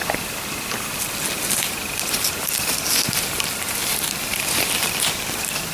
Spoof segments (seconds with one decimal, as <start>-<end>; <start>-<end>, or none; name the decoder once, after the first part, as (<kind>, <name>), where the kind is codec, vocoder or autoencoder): none